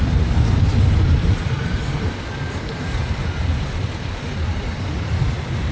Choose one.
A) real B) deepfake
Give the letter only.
A